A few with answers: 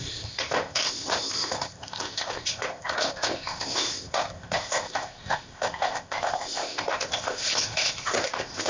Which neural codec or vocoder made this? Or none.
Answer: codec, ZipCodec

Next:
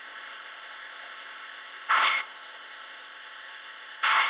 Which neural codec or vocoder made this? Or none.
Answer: codec, ZipCodec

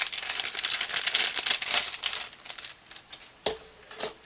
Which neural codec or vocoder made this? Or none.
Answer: none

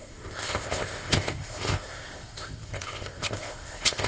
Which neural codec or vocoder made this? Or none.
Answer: codec, ZipCodec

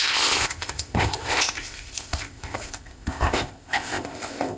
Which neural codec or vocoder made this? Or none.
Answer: codec, ZipCodec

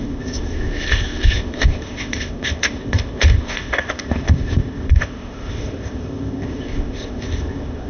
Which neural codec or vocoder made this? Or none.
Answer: codec, ZipCodec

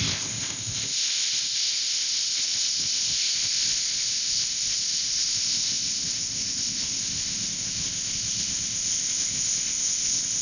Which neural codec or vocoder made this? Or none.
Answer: codec, ZipCodec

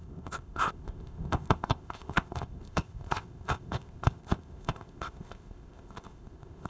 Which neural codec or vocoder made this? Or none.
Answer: codec, ZipCodec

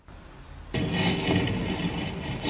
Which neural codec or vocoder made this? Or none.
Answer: none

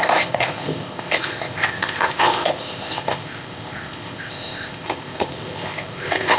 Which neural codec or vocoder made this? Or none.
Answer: codec, ZipCodec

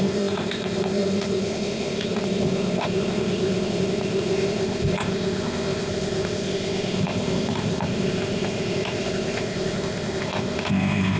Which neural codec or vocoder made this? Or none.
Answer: codec, ZipCodec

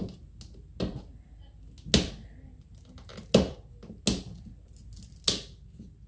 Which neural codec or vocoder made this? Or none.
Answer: none